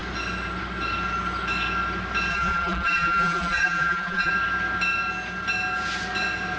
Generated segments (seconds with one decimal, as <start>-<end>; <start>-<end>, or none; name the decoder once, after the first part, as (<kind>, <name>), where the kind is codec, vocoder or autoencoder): 2.3-4.3 (vocoder, BigVGAN v2)